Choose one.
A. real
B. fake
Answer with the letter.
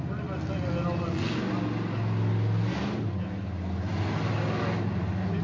A